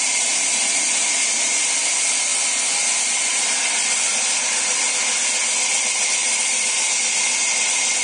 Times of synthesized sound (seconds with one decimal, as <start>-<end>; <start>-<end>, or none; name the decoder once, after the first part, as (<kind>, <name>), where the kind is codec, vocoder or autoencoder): 6.2-6.7 (vocoder, BigVGAN v2)